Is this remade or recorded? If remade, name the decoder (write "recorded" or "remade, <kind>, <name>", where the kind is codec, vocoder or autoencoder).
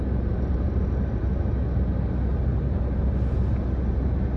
recorded